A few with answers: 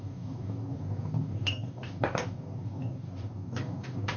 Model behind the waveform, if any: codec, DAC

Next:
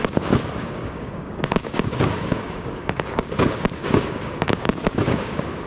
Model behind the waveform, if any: codec, DAC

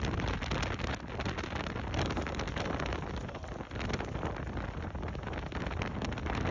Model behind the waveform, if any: none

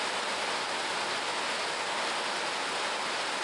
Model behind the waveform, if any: none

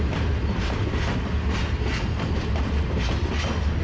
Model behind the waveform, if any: none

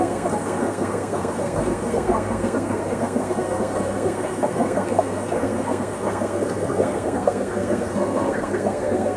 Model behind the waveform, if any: codec, SNAC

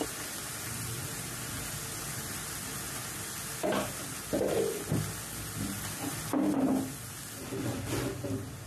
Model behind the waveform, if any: none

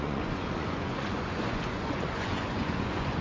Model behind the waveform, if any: vocoder, Vocos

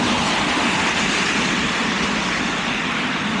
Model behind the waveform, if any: vocoder, BigVGAN v2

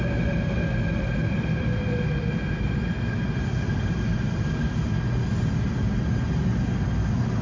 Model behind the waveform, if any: none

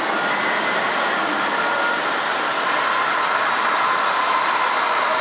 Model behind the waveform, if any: none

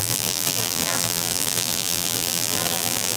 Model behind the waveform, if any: vocoder, BigVGAN v2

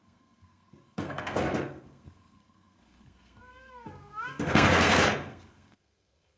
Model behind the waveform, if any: codec, SNAC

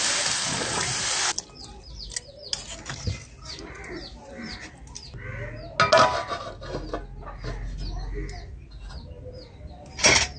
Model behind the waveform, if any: none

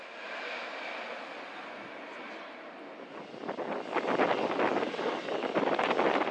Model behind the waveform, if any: none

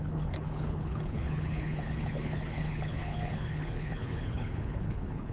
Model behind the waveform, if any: codec, HILCodec